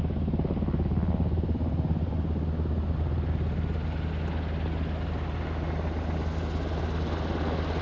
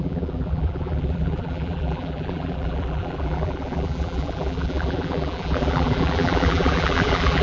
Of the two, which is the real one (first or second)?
first